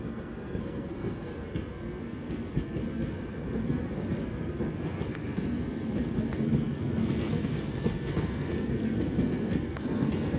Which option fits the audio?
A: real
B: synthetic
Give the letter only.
B